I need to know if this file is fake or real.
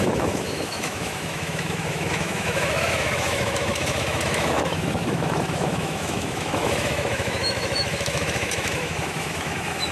fake